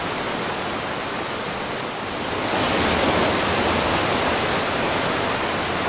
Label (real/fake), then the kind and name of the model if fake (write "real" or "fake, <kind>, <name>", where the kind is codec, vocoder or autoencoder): real